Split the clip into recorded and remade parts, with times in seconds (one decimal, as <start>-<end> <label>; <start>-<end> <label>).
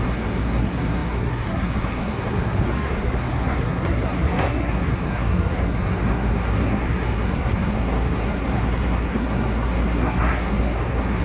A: 0.0-11.2 remade